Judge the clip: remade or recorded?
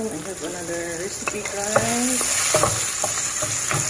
recorded